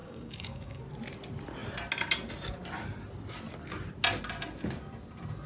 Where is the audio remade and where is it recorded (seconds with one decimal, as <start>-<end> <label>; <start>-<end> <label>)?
0.0-0.8 remade; 0.8-5.5 recorded